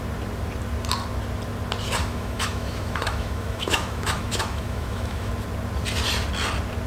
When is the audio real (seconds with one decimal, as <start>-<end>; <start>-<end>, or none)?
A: 0.0-2.0; 5.3-6.9